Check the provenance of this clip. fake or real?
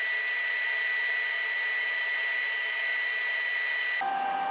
real